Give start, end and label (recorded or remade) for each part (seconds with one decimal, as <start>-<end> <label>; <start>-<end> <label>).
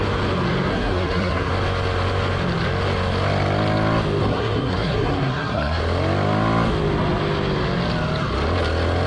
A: 0.0-0.7 recorded; 0.7-1.5 remade; 1.5-4.3 recorded; 4.3-5.8 remade; 5.8-9.1 recorded